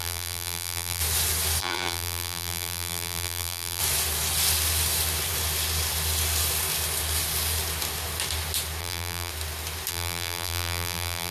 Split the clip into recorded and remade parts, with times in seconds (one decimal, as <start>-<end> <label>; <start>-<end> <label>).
0.0-1.0 remade; 1.0-1.6 recorded; 1.6-3.8 remade; 3.8-8.8 recorded; 8.8-9.3 remade; 9.3-9.9 recorded; 9.9-11.3 remade